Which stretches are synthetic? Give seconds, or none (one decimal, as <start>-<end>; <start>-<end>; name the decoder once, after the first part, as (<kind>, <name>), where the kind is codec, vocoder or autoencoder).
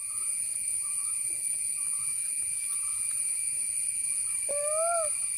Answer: 0.0-4.2 (vocoder, Vocos)